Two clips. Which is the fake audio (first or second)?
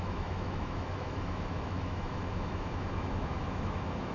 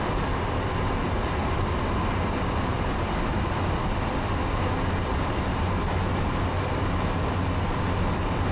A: first